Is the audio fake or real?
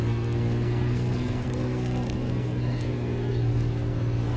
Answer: fake